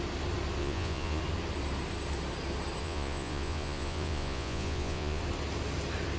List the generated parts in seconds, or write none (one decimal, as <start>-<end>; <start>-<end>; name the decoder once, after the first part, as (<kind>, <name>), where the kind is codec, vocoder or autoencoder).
0.6-1.2 (vocoder, Vocos); 2.8-5.2